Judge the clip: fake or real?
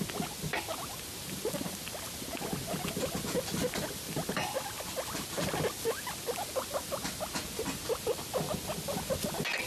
real